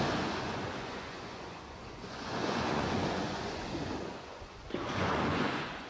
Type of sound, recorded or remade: remade